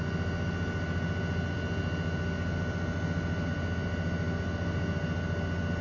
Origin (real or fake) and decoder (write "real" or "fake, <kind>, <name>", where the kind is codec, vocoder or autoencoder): real